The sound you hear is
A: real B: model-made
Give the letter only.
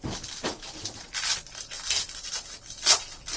A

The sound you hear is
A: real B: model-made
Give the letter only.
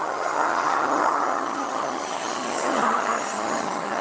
B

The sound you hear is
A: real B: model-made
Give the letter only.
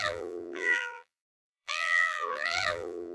B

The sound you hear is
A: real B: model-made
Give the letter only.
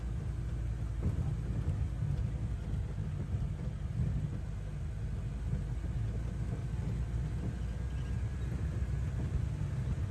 A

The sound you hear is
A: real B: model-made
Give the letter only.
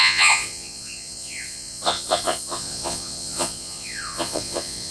B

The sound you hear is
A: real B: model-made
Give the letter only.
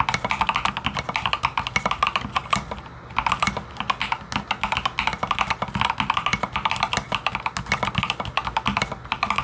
A